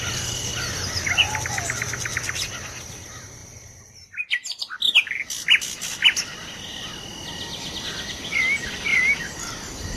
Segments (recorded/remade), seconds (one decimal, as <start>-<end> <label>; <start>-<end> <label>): 0.0-0.5 recorded; 0.5-1.4 remade; 1.4-3.4 recorded; 3.4-4.6 remade; 4.6-8.9 recorded; 8.9-10.0 remade